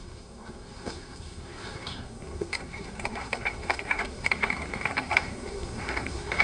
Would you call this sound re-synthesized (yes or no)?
yes